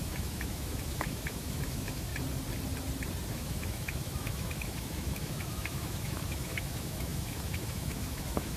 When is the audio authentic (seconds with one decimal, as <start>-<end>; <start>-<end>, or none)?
2.1-3.3